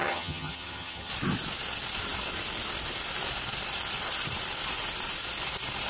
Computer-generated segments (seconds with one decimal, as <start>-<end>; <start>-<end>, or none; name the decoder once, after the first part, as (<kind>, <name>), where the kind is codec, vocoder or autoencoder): 0.0-1.1 (vocoder, HiFi-GAN)